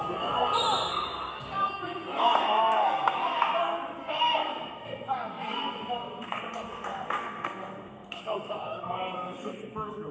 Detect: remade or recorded remade